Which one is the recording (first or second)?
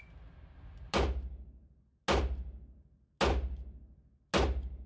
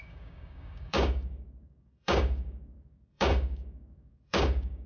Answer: first